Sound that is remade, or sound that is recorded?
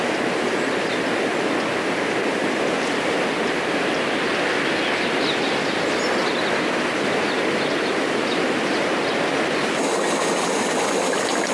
recorded